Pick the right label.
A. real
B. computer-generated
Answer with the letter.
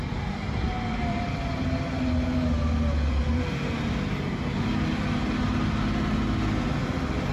A